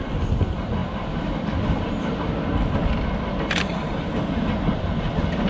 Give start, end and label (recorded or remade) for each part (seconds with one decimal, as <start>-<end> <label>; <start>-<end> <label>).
0.0-5.5 recorded